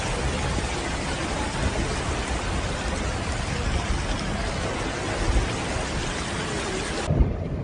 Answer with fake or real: real